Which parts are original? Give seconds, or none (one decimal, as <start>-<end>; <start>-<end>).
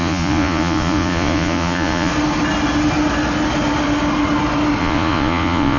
2.1-4.8